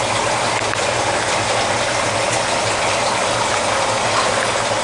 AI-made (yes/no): no